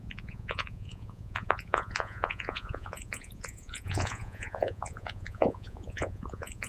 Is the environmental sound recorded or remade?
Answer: remade